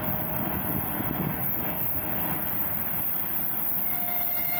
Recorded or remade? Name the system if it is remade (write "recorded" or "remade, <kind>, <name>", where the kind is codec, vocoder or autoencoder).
recorded